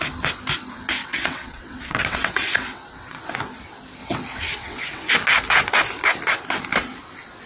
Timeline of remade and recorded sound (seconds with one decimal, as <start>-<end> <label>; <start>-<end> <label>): 0.0-1.0 recorded; 1.0-3.2 remade; 3.2-4.0 recorded; 4.0-5.1 remade; 5.1-7.5 recorded